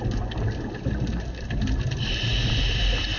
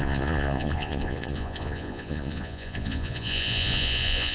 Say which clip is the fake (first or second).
second